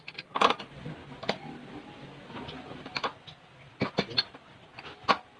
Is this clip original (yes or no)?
yes